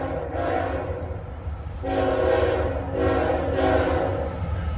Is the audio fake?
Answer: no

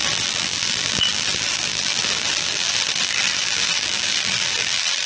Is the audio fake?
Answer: yes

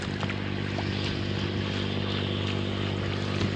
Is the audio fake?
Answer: no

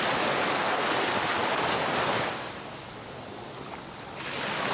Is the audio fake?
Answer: no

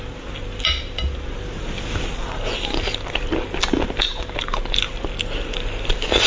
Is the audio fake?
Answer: no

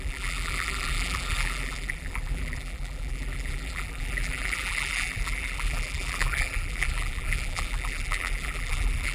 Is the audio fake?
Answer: yes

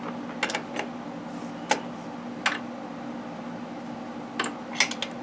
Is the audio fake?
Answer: no